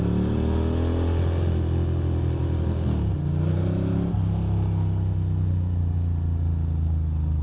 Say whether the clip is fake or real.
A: real